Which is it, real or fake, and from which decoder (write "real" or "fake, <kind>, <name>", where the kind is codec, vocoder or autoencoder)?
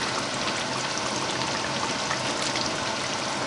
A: real